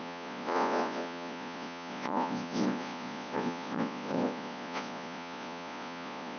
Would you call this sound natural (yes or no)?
no